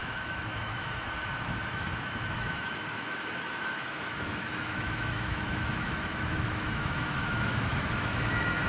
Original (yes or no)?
no